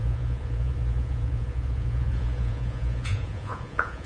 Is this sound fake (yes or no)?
yes